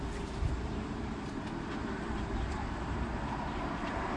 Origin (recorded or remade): remade